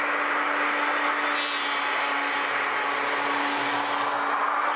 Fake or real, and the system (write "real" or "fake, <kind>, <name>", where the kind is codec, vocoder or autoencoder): real